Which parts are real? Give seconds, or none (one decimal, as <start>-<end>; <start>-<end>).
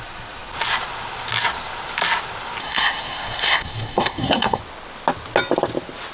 0.0-2.6; 4.6-6.1